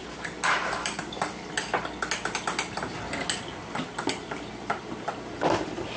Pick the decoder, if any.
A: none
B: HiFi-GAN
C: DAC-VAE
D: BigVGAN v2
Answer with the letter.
A